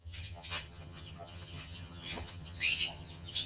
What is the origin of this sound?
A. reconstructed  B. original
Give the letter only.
A